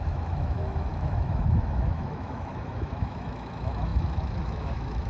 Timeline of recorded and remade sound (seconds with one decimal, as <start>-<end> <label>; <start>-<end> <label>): 0.0-5.1 remade